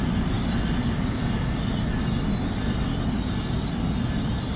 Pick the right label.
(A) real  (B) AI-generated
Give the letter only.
A